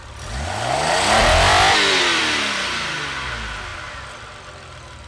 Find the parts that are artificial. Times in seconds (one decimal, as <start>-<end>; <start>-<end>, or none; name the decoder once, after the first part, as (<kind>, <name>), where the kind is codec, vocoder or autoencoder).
1.2-2.2 (vocoder, BigVGAN v2)